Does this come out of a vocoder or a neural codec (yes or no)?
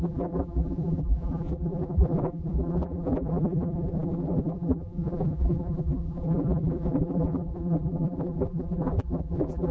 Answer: yes